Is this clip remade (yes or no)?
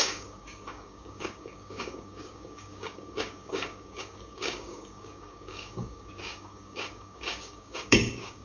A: yes